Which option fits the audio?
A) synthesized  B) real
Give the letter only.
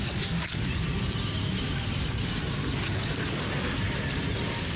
B